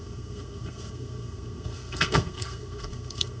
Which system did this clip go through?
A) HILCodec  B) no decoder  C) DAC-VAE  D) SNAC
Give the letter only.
D